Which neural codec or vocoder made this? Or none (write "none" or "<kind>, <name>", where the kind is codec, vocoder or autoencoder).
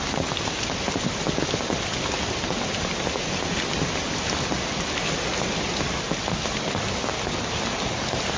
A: none